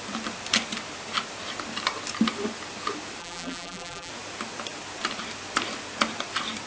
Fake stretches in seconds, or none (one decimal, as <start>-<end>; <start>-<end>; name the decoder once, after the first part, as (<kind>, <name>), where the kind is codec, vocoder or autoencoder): 3.2-4.1 (vocoder, BigVGAN v2)